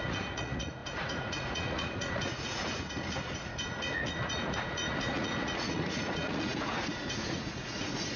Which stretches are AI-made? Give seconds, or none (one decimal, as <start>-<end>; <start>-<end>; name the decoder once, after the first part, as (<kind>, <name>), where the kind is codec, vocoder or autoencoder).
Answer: 0.0-8.2 (vocoder, Vocos)